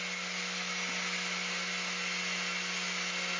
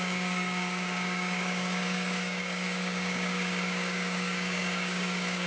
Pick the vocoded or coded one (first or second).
second